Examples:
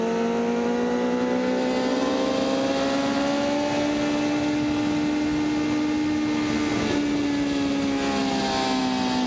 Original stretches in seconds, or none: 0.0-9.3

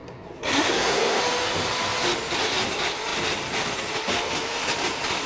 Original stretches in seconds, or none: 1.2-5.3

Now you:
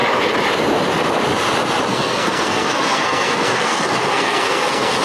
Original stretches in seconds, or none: 0.0-1.9

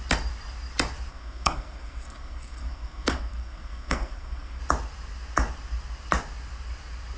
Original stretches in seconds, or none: 0.0-1.1; 4.6-7.2

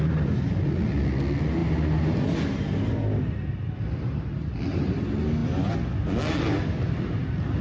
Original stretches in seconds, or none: 0.0-7.6

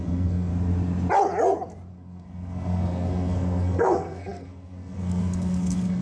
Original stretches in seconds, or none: 0.5-1.9

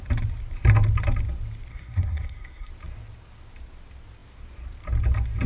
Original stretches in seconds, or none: 0.0-1.7; 2.7-5.5